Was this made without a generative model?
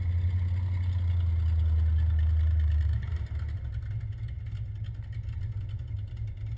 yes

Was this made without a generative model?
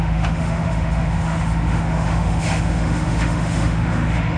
no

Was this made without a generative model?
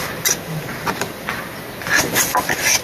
yes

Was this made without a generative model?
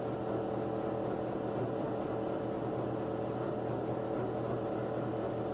yes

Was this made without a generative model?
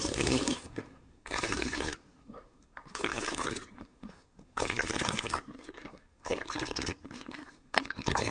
no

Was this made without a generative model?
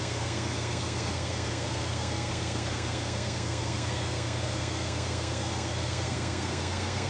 no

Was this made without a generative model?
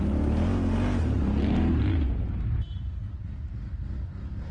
yes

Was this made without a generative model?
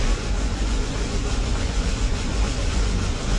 no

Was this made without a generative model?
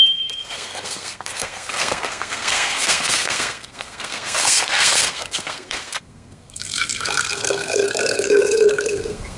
no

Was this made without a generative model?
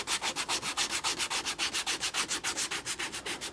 yes